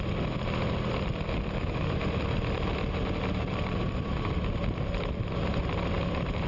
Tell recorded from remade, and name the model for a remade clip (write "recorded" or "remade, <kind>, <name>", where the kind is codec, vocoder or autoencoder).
recorded